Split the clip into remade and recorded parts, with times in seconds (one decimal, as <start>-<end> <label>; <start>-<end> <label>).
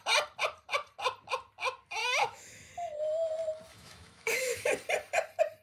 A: 0.0-2.0 recorded; 2.0-2.7 remade; 2.7-3.7 recorded; 3.7-4.7 remade; 4.7-5.6 recorded